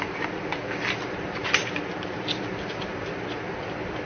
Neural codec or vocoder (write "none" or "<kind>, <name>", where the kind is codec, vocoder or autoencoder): none